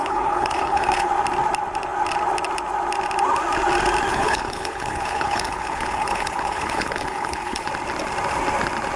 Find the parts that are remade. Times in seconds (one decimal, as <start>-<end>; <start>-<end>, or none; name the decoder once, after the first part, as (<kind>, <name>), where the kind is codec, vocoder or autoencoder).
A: 0.0-1.1 (codec, HILCodec); 4.1-7.7